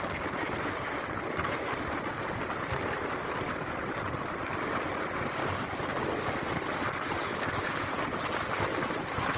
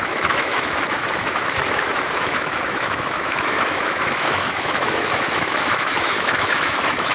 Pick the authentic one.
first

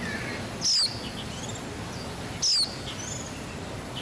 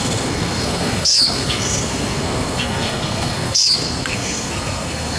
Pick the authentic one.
first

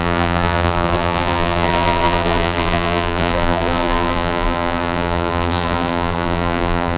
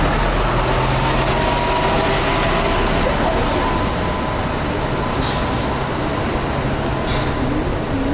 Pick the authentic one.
second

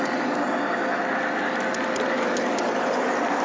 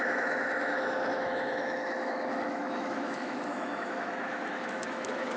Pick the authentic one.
first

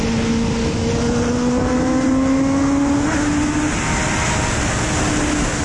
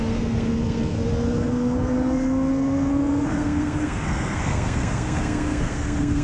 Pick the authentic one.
first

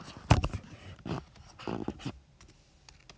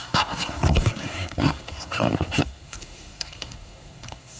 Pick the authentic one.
first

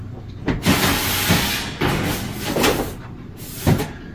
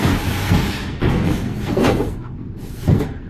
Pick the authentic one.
first